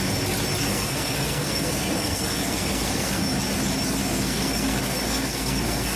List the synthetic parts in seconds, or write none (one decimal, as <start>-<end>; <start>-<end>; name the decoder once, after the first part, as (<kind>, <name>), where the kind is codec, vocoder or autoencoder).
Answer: 0.6-3.3 (codec, SNAC); 4.0-6.0